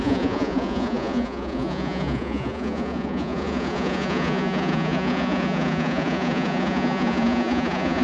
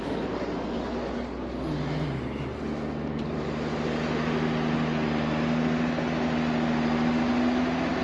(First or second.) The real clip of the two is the second